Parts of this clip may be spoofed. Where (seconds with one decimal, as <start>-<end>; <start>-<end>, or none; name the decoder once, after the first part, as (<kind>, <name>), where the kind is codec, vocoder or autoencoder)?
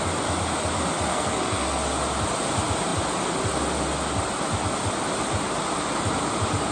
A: 1.1-1.8 (codec, SNAC)